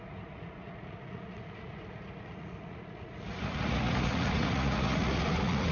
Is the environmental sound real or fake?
fake